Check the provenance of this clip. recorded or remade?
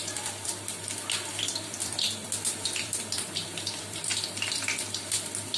remade